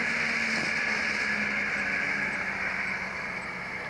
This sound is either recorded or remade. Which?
remade